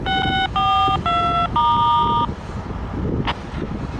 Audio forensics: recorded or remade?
recorded